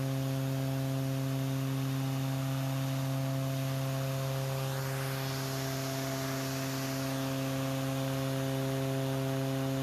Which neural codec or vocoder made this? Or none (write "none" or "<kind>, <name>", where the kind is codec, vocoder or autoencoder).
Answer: none